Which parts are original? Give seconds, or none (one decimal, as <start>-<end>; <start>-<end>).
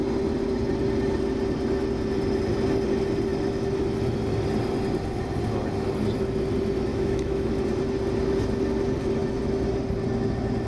0.0-6.9; 7.5-10.7